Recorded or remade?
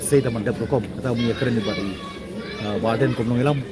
recorded